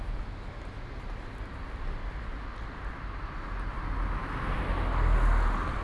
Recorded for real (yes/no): yes